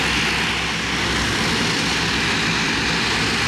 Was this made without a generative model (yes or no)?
yes